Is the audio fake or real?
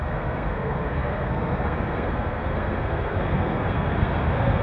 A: fake